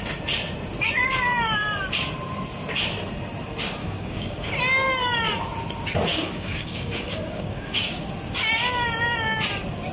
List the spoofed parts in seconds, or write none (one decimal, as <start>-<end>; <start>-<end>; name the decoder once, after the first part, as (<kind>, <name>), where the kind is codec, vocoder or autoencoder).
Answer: 3.8-4.5 (codec, DAC); 6.1-8.1